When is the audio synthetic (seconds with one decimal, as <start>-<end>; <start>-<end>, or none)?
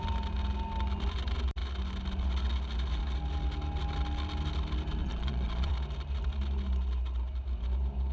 5.0-5.7